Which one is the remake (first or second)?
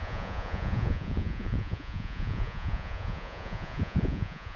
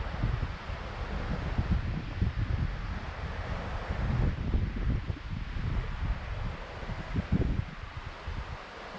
first